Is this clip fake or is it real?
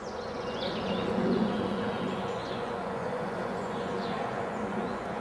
fake